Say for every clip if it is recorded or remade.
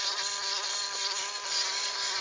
recorded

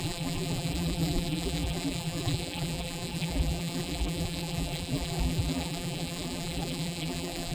remade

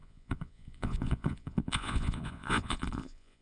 remade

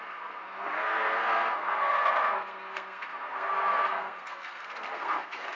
remade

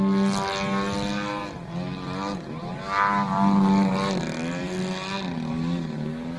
recorded